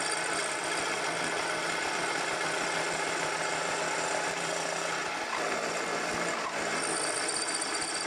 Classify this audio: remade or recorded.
recorded